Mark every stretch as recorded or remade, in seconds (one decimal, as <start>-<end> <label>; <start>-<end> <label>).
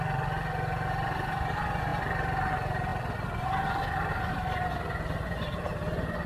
0.0-6.3 recorded